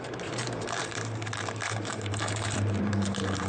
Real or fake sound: fake